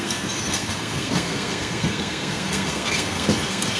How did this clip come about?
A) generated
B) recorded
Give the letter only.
A